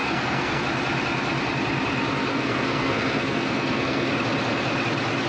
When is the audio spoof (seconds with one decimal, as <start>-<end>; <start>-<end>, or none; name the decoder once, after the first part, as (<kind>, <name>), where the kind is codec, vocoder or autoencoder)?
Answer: 0.0-0.6 (codec, SNAC); 2.3-4.1